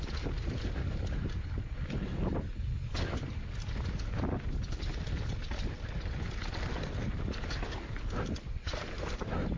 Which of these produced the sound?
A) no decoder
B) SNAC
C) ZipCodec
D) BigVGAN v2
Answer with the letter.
A